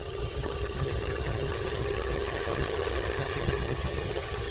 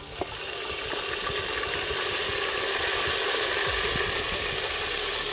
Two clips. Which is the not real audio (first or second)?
first